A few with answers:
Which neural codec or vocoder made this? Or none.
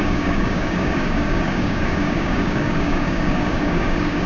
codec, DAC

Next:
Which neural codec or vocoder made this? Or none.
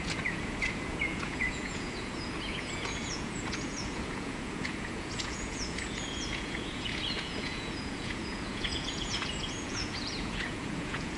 vocoder, Vocos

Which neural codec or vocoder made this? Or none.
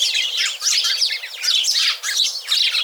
none